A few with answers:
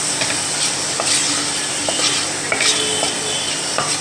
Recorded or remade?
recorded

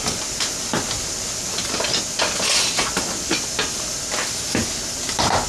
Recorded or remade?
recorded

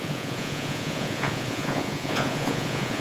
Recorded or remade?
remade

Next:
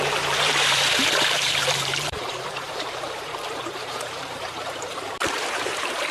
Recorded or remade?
remade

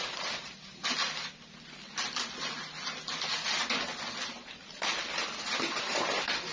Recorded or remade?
recorded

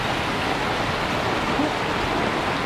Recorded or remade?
recorded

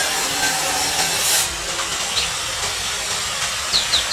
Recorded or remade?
recorded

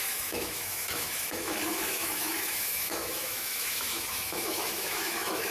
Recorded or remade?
remade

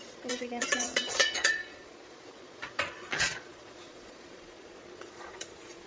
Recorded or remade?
remade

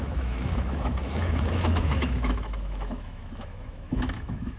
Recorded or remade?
remade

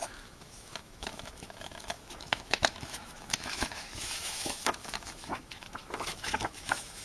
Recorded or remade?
remade